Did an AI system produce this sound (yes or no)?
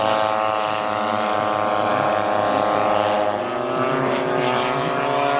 no